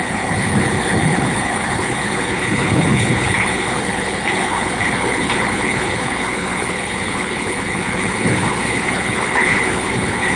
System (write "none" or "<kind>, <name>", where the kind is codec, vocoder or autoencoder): codec, HILCodec